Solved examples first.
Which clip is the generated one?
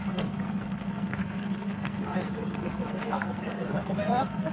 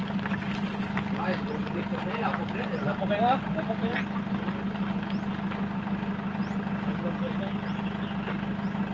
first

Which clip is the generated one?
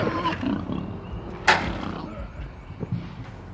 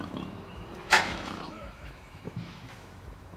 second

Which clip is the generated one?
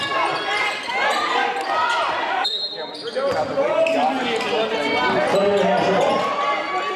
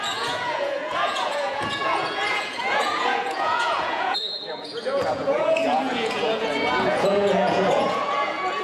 second